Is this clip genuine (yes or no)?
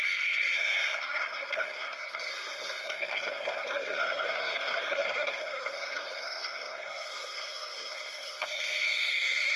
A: no